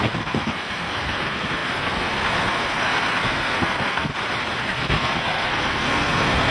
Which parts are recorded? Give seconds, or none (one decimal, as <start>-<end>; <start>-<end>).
4.1-4.6